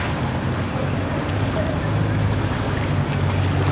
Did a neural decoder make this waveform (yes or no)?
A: no